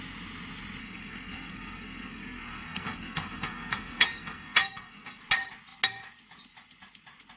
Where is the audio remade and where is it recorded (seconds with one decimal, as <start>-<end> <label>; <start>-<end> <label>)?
0.0-0.8 recorded; 0.8-5.2 remade; 5.2-7.4 recorded